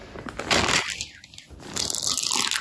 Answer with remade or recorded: recorded